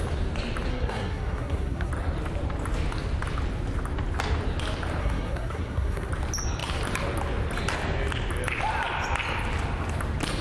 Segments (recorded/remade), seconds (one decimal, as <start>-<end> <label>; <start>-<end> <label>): 0.0-0.7 recorded; 0.7-1.9 remade; 1.9-5.0 recorded; 5.0-6.1 remade; 6.1-10.4 recorded